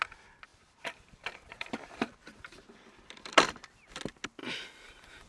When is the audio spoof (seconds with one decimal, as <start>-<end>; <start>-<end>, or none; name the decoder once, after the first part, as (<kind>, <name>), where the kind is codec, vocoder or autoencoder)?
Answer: 0.5-3.7 (vocoder, BigVGAN v2); 4.4-5.3